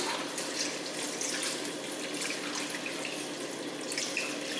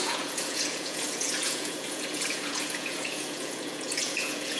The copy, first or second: second